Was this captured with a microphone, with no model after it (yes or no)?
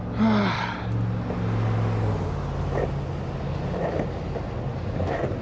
yes